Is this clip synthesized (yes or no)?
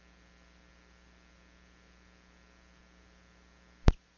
no